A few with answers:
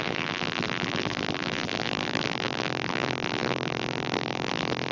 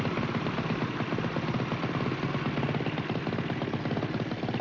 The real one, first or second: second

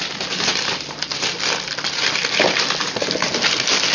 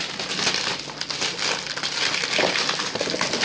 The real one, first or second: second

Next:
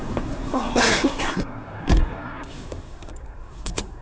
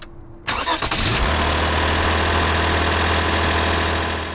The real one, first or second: second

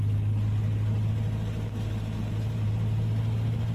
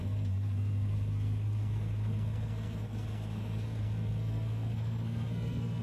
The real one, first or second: first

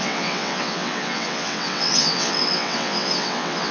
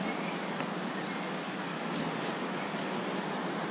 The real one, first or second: second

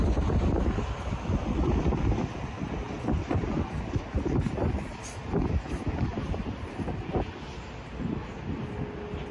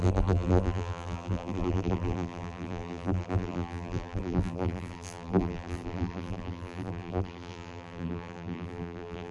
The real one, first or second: first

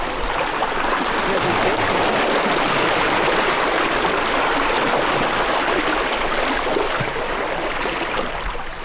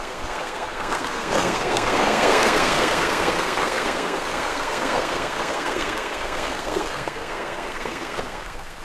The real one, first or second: first